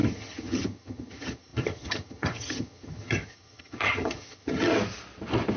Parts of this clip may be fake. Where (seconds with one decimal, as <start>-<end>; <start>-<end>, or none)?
0.0-4.7